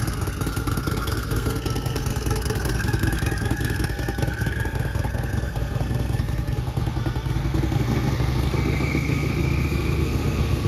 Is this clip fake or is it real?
fake